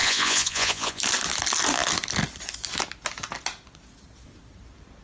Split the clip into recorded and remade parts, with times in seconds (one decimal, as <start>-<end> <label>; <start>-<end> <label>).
0.0-1.0 remade; 1.0-5.0 recorded